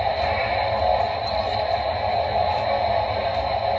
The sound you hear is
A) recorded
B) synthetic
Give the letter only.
A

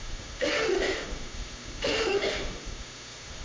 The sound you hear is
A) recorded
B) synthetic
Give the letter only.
B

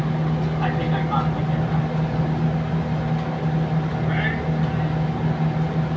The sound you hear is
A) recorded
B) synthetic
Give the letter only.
A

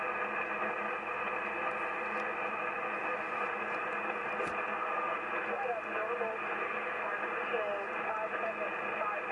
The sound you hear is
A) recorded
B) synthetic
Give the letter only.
A